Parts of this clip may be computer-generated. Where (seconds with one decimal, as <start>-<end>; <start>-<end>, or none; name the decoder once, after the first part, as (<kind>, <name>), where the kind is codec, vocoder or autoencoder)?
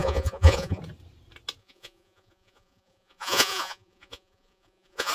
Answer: 0.0-0.8 (vocoder, Vocos); 1.6-5.1